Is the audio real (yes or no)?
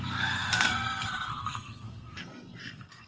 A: no